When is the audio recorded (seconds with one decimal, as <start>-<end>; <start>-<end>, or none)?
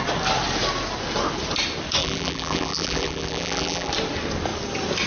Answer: 0.0-2.0; 3.9-5.1